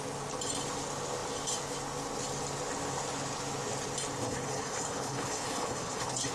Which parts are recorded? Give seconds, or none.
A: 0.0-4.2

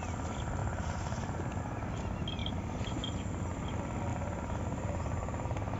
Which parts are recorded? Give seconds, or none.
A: 0.0-0.6; 1.6-2.4; 3.3-4.1

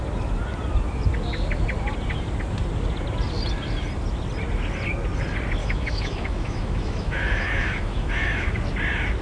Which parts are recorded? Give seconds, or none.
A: 0.0-5.6; 8.6-9.2